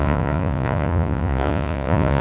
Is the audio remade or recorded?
remade